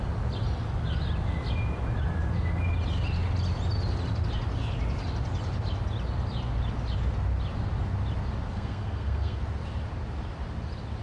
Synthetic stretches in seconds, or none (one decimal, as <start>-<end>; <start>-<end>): 8.5-9.4